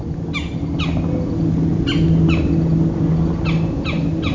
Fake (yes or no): no